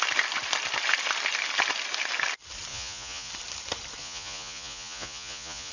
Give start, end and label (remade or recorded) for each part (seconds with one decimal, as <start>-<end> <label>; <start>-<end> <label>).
0.0-2.7 recorded; 2.7-3.3 remade; 3.3-4.0 recorded; 4.0-5.7 remade